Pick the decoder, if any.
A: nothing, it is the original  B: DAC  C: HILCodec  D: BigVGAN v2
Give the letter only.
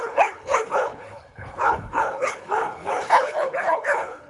C